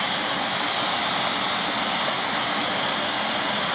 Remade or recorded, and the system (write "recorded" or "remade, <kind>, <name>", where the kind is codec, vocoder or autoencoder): recorded